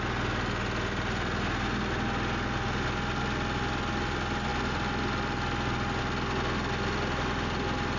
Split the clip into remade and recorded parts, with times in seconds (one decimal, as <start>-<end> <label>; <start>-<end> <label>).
0.0-8.0 recorded